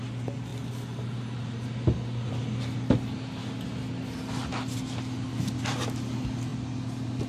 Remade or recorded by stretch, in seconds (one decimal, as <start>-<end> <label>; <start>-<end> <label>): 0.0-7.3 recorded